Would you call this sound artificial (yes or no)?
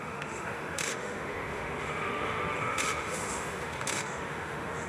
yes